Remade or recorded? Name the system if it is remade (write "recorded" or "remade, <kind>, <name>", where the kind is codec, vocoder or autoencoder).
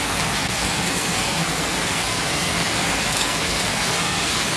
remade, codec, SNAC